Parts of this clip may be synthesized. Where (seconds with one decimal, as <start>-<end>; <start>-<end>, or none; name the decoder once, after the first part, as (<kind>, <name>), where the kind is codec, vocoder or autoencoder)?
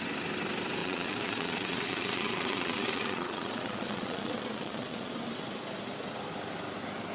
0.8-5.1 (vocoder, Vocos)